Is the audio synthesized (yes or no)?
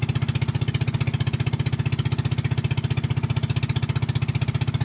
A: no